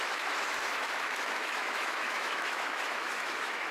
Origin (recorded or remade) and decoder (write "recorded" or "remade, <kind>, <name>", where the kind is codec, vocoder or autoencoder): remade, autoencoder, DAC-VAE